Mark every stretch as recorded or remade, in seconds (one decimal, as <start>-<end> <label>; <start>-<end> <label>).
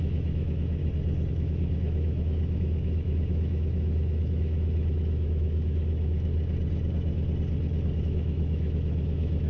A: 0.0-0.8 remade; 0.8-1.3 recorded; 1.3-6.3 remade; 6.3-8.0 recorded; 8.0-9.5 remade